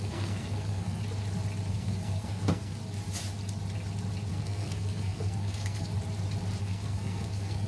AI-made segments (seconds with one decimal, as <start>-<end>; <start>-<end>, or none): 0.0-1.0; 1.7-2.8; 4.3-5.9; 6.6-7.7